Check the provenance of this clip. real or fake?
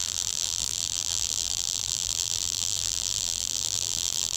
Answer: fake